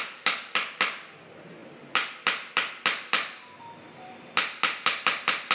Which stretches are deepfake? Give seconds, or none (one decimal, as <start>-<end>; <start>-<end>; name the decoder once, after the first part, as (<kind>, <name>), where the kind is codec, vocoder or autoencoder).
none